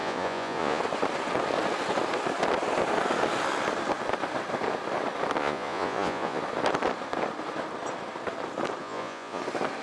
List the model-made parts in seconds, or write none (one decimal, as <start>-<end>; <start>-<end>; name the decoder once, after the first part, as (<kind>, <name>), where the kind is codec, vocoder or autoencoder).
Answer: 0.0-0.8 (vocoder, Vocos); 5.4-6.4; 8.8-9.4